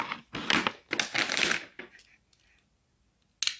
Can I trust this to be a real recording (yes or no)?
yes